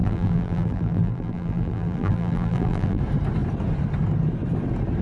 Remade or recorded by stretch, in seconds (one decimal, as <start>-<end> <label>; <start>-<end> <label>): 0.0-3.0 remade; 3.0-5.0 recorded